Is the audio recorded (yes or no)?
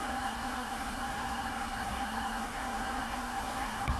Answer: no